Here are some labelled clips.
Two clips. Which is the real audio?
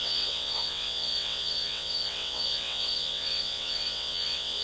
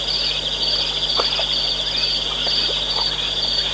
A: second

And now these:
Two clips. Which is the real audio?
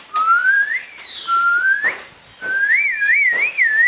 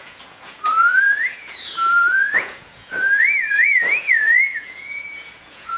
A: first